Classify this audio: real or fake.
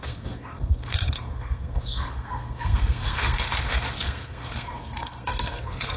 fake